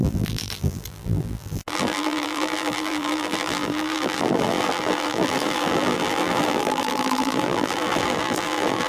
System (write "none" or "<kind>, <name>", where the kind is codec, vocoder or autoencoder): vocoder, BigVGAN v2